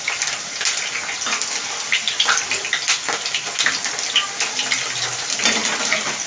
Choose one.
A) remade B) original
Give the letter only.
B